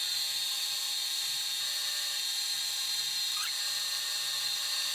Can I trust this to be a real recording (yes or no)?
no